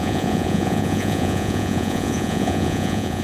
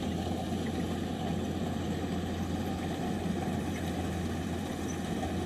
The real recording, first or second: second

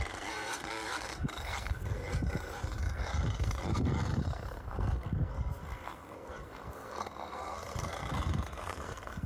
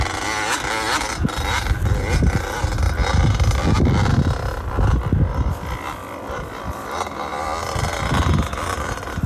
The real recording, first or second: second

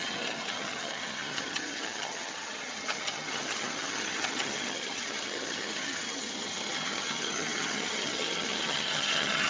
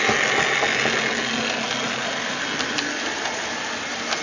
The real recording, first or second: second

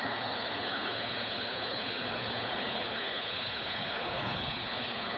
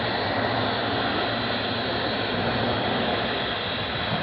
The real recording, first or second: second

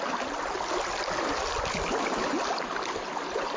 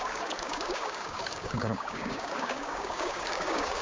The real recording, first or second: first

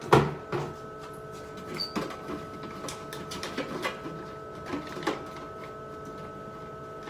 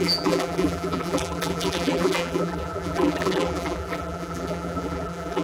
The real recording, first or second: first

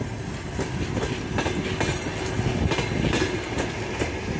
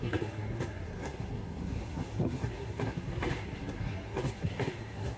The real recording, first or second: first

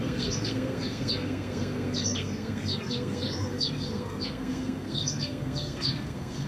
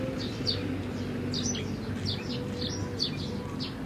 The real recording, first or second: second